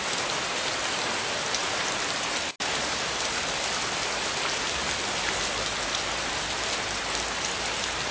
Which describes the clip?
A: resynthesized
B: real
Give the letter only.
B